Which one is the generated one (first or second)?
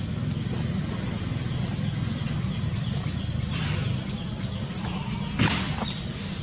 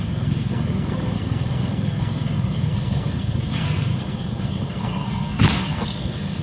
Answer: second